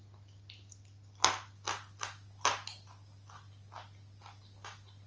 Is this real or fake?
real